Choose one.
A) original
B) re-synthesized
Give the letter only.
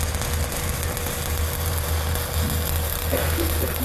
A